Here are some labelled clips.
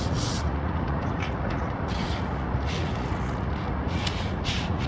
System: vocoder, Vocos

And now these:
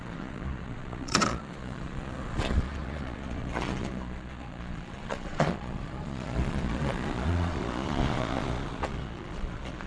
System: vocoder, Vocos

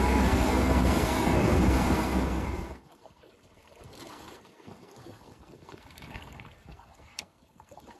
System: codec, SNAC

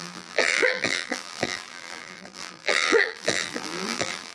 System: vocoder, BigVGAN v2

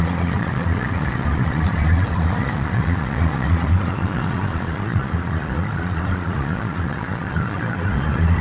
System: vocoder, Vocos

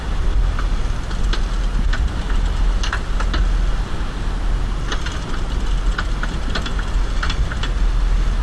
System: none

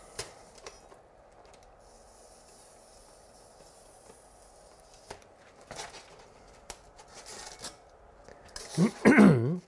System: none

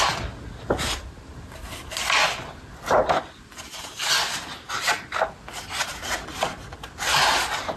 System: none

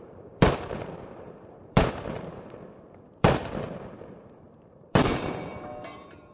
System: vocoder, BigVGAN v2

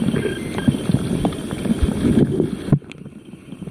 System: none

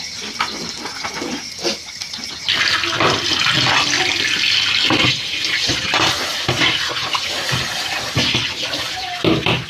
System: none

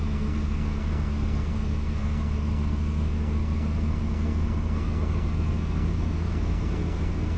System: codec, SNAC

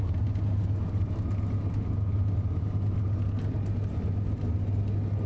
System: none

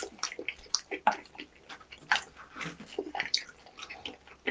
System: none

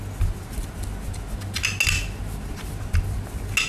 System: none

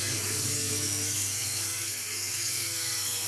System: codec, SNAC